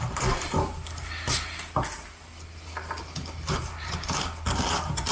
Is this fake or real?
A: real